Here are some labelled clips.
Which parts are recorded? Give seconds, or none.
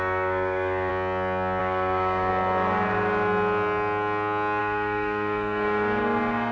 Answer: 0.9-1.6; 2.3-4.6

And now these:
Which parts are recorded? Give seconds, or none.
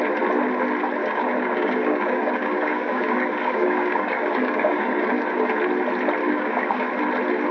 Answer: 0.0-1.0; 5.5-6.2; 6.9-7.5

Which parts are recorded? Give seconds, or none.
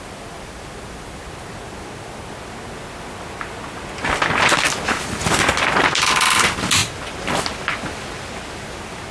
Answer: 0.0-9.1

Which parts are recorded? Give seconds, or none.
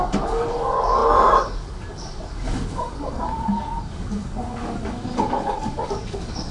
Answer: none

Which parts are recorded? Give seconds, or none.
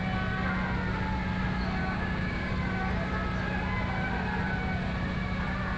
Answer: 0.0-1.8; 2.5-5.8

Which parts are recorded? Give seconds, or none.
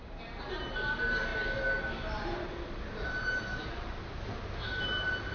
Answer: 0.0-5.3